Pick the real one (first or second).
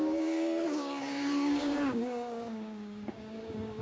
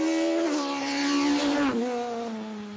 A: second